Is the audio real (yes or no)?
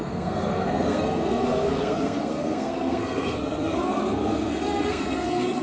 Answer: no